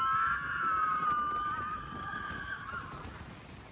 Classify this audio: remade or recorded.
recorded